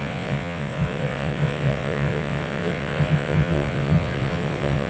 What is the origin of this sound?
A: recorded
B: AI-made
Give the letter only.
B